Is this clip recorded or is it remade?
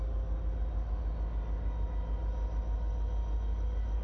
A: recorded